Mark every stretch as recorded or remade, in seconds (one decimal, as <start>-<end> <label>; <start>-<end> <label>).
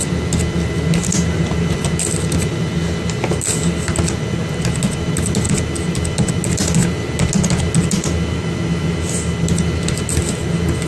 0.0-10.9 recorded